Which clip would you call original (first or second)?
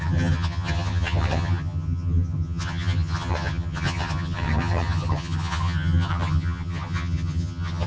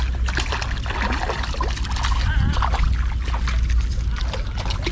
second